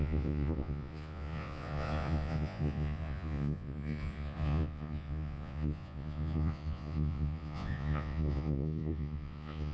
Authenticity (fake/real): fake